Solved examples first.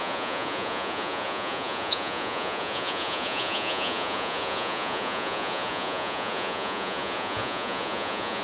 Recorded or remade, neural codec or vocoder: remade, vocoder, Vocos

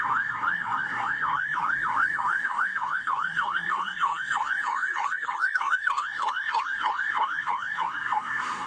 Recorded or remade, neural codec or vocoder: remade, codec, SNAC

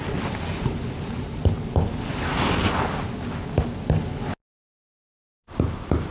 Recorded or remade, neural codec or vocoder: recorded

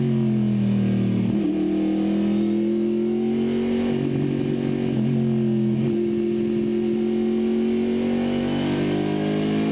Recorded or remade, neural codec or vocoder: recorded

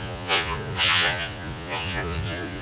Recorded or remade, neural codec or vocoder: remade, vocoder, Vocos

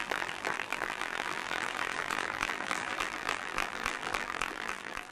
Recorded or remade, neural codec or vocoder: remade, vocoder, BigVGAN v2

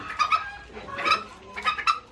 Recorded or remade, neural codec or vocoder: recorded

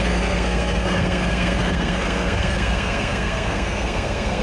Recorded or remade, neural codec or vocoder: remade, codec, SNAC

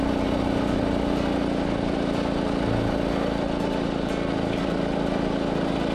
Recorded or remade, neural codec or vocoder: recorded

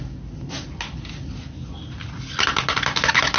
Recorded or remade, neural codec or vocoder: recorded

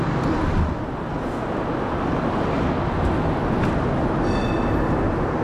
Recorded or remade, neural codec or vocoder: recorded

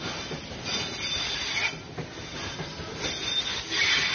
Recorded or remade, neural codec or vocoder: recorded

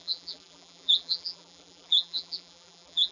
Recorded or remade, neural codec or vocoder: remade, vocoder, BigVGAN v2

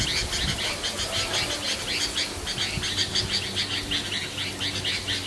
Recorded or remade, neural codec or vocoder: recorded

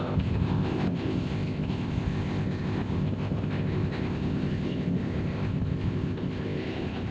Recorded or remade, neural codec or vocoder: remade, codec, ZipCodec